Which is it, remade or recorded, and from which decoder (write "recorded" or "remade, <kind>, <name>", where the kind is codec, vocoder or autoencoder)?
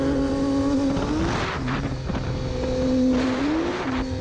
recorded